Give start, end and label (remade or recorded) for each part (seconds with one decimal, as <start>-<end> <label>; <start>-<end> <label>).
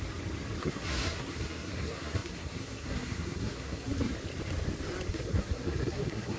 0.0-0.6 recorded; 0.6-4.1 remade; 4.1-5.1 recorded; 5.1-6.4 remade